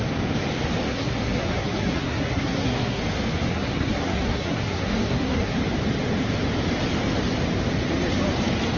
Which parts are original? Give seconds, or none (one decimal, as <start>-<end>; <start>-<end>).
0.0-0.9; 3.0-3.5; 5.6-8.8